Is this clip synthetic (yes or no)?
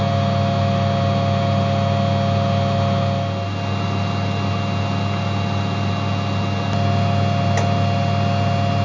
no